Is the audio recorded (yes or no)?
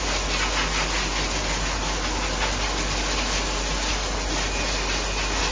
yes